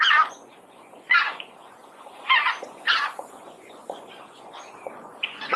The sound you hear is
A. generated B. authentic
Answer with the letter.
A